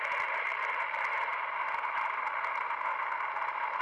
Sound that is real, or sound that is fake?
real